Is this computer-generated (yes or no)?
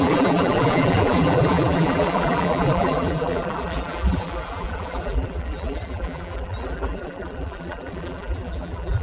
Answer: yes